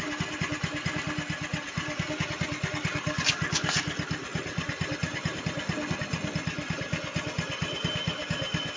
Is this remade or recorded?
recorded